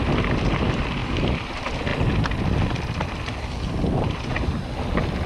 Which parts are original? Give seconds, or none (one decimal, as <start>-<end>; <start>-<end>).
0.0-5.3